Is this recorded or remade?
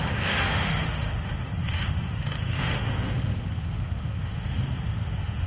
remade